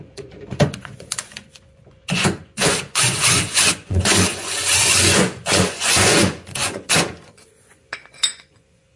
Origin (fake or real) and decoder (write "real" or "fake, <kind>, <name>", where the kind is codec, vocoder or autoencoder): fake, vocoder, Vocos